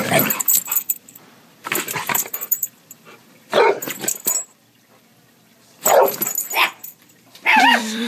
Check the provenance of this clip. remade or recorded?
remade